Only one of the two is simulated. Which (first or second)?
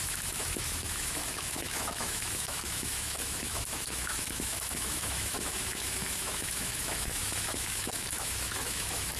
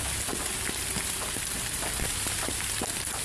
first